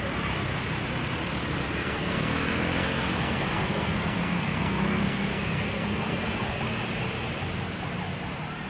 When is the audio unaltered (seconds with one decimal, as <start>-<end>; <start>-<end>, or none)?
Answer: 0.0-1.6; 6.6-8.7

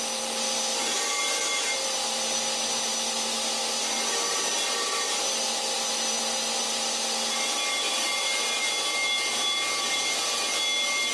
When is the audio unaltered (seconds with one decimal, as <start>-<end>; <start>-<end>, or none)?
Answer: 0.0-11.1

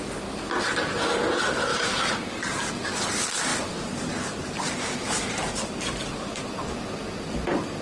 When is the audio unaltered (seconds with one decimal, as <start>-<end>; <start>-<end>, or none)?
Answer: 0.0-1.7; 2.7-3.5; 6.6-7.8

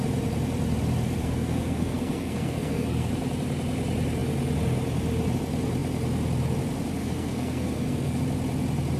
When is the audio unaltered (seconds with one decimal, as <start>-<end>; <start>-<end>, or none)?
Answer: 0.0-1.2; 3.1-7.0; 8.2-9.0

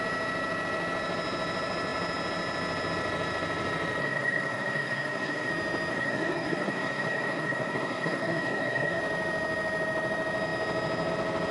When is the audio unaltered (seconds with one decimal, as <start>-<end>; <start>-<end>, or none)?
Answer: 0.0-4.0; 5.5-5.9; 9.0-11.5